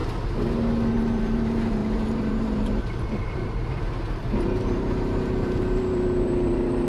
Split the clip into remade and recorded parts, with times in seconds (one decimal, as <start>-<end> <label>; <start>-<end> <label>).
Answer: 0.0-0.9 recorded; 0.9-3.6 remade; 3.6-4.2 recorded; 4.2-6.9 remade